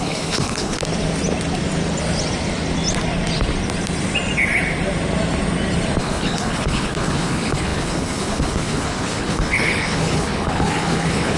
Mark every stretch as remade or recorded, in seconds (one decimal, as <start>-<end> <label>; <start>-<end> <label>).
0.0-0.8 remade; 0.8-6.0 recorded; 6.0-11.4 remade

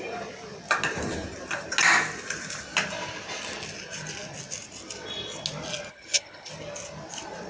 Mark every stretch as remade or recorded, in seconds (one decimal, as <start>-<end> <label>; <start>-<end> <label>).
0.0-5.9 recorded; 5.9-6.5 remade; 6.5-7.5 recorded

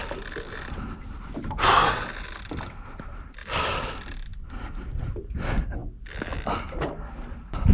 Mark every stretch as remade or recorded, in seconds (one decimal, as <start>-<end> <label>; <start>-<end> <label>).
0.0-1.7 remade; 1.7-3.4 recorded; 3.4-3.9 remade; 3.9-4.3 recorded; 4.3-5.3 remade; 5.3-5.8 recorded; 5.8-6.4 remade; 6.4-7.7 recorded

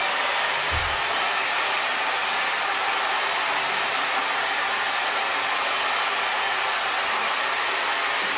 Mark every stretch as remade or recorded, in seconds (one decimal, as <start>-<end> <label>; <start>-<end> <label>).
0.0-1.2 remade; 1.2-8.4 recorded

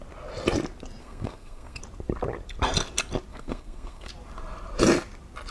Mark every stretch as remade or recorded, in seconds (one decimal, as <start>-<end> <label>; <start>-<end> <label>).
0.0-1.0 recorded; 1.0-1.8 remade; 1.8-3.3 recorded; 3.3-4.1 remade; 4.1-5.5 recorded